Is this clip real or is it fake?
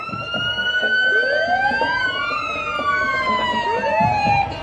real